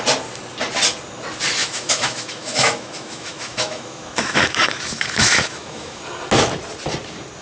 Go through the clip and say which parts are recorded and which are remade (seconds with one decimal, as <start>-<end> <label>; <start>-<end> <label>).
0.0-1.6 recorded; 1.6-6.0 remade; 6.0-7.4 recorded